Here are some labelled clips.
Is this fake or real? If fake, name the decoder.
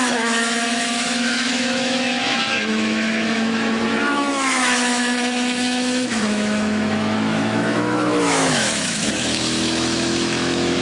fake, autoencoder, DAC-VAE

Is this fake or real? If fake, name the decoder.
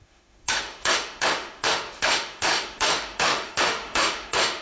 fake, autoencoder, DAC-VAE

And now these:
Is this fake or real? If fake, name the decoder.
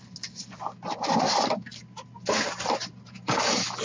real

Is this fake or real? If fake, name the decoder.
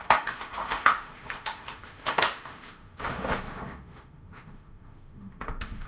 fake, autoencoder, DAC-VAE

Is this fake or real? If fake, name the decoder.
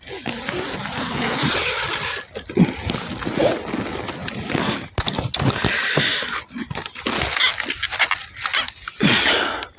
real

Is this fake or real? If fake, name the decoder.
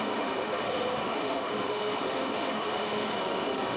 fake, autoencoder, DAC-VAE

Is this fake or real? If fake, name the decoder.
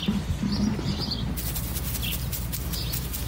real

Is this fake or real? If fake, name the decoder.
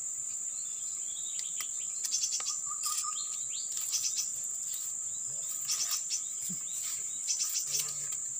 real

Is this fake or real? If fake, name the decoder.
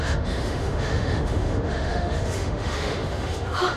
fake, autoencoder, DAC-VAE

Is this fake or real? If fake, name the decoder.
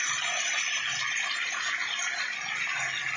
real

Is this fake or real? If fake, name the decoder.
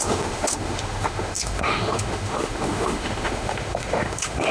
fake, autoencoder, DAC-VAE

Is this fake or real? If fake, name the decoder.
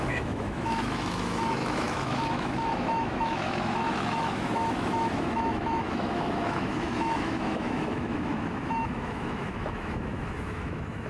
fake, autoencoder, DAC-VAE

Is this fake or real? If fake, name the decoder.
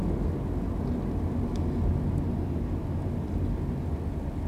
real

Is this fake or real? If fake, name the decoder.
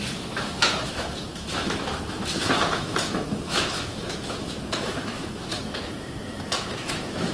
fake, autoencoder, DAC-VAE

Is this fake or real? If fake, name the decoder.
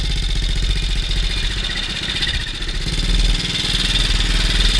real